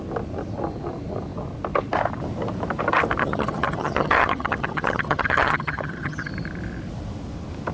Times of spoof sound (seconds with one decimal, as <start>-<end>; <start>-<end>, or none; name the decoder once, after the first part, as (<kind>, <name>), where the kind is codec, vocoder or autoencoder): 3.2-6.3 (vocoder, HiFi-GAN)